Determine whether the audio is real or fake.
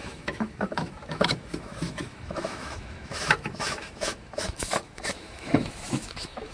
fake